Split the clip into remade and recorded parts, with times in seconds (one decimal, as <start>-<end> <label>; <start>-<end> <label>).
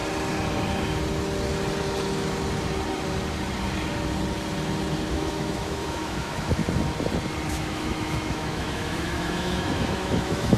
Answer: 0.0-5.1 recorded; 5.1-6.6 remade; 6.6-7.5 recorded; 7.5-10.6 remade